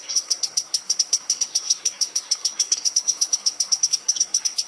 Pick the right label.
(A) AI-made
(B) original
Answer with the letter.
A